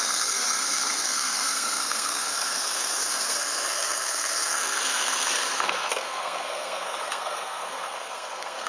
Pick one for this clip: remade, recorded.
remade